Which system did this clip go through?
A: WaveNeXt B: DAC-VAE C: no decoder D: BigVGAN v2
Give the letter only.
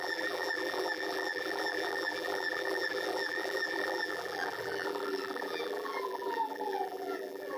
D